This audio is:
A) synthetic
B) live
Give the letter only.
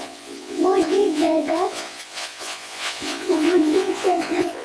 A